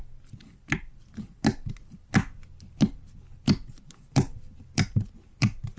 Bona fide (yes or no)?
yes